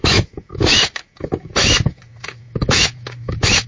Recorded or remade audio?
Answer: remade